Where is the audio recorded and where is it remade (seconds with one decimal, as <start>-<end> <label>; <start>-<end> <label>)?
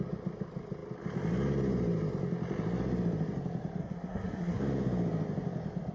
0.0-3.8 recorded; 3.8-4.6 remade; 4.6-5.9 recorded